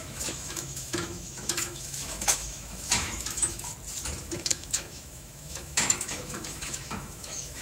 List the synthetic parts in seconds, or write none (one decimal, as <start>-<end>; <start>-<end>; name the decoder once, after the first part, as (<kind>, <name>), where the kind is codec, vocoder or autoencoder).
0.0-3.7 (autoencoder, DAC-VAE); 4.2-7.6